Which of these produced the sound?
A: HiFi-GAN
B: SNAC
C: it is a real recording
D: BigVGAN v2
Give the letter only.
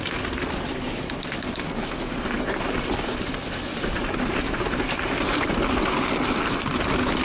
C